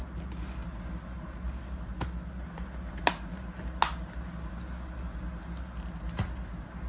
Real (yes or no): yes